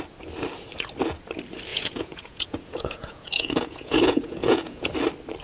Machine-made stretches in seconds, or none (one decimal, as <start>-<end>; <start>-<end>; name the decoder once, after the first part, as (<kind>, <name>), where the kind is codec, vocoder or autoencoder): 1.7-4.9 (vocoder, Vocos)